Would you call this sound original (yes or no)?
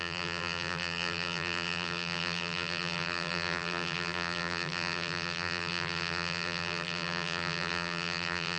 no